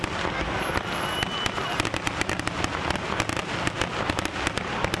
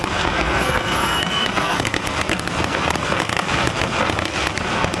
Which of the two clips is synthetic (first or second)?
second